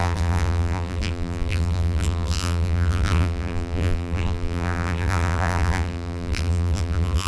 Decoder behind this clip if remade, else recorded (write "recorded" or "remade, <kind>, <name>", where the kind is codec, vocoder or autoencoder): remade, vocoder, BigVGAN v2